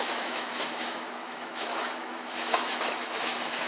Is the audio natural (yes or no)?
no